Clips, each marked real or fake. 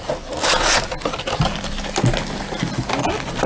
real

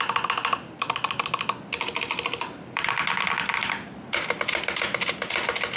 real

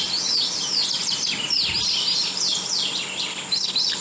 real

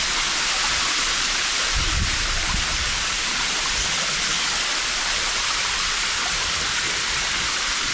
real